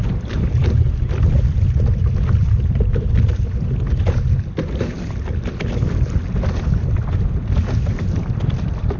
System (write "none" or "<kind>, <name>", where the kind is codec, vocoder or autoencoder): none